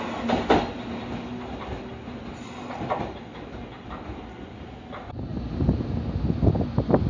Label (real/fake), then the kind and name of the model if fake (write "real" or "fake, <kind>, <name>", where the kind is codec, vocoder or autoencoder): real